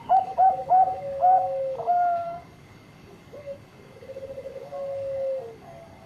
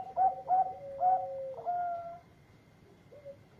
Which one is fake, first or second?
first